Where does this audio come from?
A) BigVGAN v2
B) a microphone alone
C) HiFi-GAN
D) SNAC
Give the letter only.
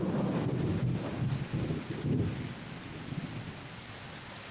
B